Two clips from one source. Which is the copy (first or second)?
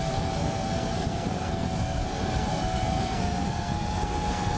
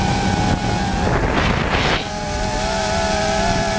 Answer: first